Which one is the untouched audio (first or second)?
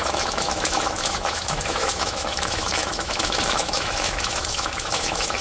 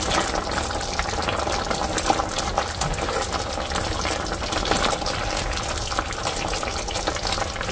second